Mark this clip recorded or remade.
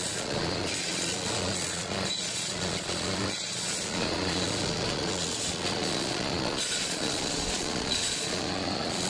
remade